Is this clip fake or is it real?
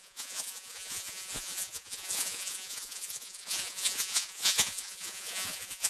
fake